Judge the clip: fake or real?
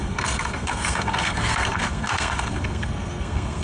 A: fake